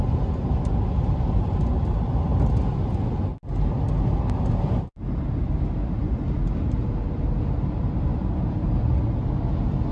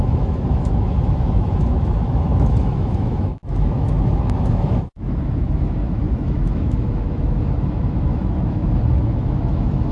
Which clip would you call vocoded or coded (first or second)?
second